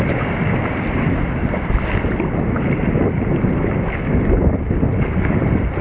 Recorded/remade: recorded